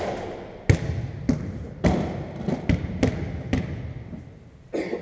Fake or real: real